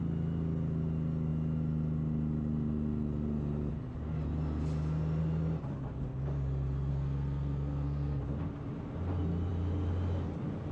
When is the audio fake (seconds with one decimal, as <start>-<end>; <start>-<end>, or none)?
6.9-8.2